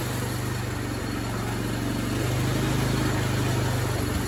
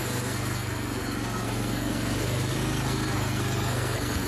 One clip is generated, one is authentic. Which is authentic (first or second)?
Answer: first